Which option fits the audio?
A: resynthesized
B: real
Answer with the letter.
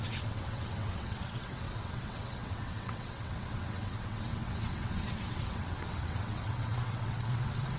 A